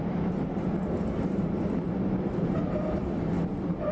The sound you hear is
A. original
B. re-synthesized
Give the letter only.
A